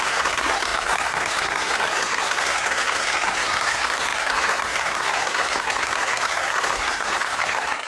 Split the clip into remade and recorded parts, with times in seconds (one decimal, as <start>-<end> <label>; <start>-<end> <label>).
0.0-7.9 remade